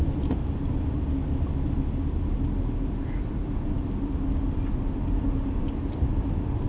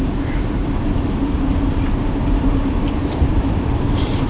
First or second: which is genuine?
first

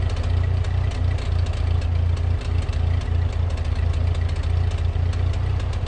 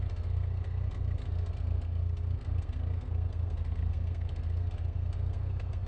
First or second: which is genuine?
first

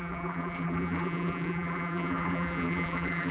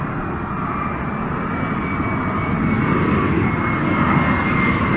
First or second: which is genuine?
second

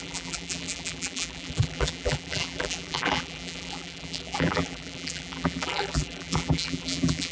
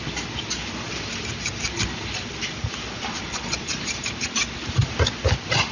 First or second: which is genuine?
second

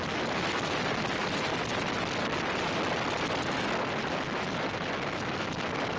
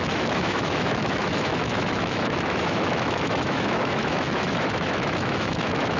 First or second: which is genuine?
first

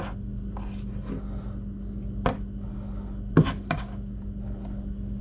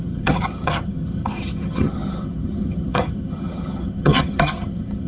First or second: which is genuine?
first